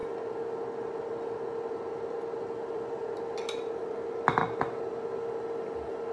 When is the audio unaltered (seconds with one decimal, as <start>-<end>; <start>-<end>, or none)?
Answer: 0.0-6.1